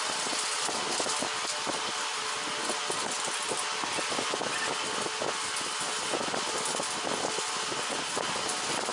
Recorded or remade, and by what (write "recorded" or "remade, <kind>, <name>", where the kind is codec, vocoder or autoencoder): recorded